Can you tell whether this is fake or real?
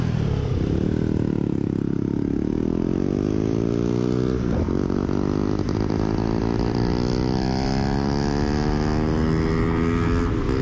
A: real